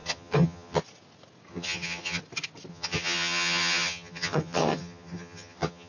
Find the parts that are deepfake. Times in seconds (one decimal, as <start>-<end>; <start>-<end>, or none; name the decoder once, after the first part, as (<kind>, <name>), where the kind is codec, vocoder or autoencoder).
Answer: 0.0-0.8 (vocoder, HiFi-GAN); 1.5-2.2; 2.7-5.9